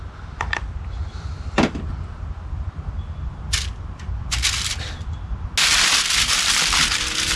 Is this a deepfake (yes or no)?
no